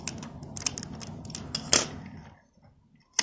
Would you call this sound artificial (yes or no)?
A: no